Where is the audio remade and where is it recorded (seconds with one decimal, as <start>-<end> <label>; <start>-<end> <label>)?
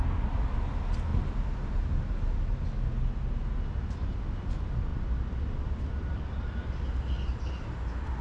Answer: 0.0-8.2 recorded